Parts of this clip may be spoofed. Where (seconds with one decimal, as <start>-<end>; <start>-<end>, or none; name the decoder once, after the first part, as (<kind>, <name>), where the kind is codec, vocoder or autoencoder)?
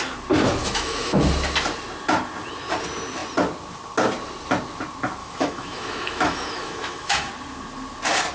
0.6-1.2 (autoencoder, DAC-VAE); 5.2-7.3